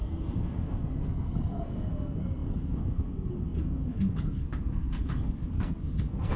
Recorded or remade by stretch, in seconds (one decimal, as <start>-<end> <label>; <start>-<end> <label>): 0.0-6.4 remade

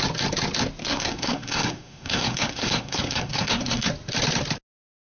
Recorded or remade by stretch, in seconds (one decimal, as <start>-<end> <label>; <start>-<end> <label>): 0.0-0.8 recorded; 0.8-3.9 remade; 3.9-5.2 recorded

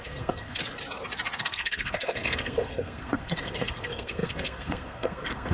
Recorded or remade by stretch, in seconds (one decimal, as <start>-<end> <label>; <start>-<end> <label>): 0.0-0.6 remade; 0.6-1.4 recorded; 1.4-5.5 remade

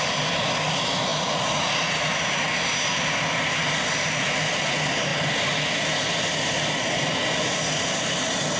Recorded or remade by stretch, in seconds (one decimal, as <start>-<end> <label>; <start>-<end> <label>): 0.0-8.6 recorded